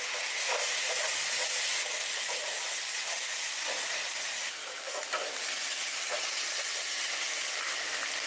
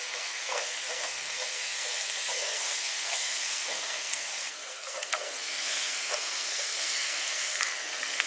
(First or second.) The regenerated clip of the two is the second